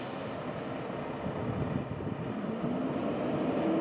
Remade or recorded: recorded